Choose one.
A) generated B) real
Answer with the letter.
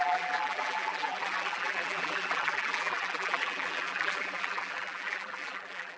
A